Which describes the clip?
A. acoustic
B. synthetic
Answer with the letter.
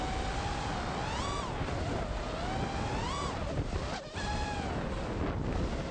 A